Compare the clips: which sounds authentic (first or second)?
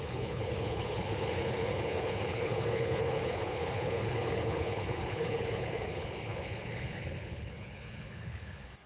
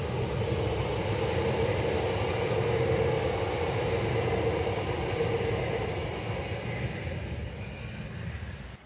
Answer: second